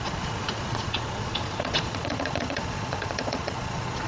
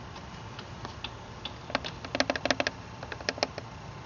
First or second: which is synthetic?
first